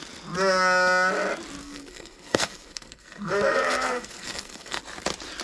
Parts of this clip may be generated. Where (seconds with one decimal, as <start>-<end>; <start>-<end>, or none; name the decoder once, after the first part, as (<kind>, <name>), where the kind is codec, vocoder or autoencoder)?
1.6-4.8 (codec, SNAC)